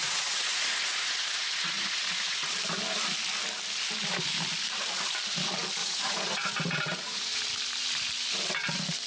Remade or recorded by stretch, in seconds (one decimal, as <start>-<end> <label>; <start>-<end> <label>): 0.0-2.5 remade; 2.5-5.8 recorded; 5.8-7.4 remade; 7.4-9.1 recorded